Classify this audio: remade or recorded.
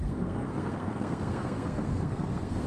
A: remade